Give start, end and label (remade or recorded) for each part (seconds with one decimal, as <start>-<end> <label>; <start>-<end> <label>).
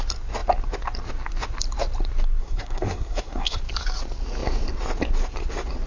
0.0-2.4 recorded; 2.4-3.6 remade; 3.6-5.9 recorded